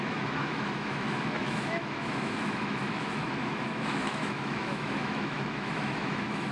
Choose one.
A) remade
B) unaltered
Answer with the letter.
A